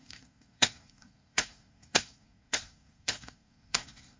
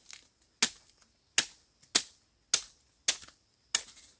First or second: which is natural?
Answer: second